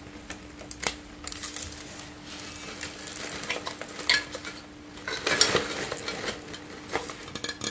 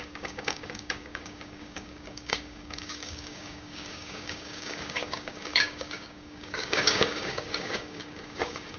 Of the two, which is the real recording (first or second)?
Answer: first